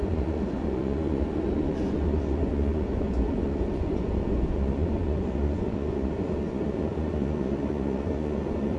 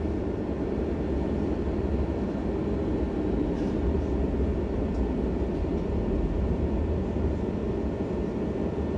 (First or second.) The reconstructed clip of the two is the first